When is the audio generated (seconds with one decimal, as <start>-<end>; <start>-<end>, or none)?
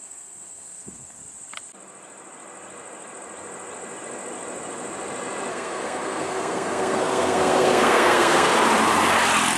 0.0-1.2; 5.5-8.5